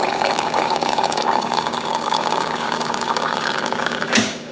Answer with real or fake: fake